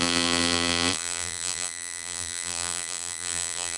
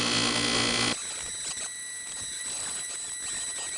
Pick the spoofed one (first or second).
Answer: first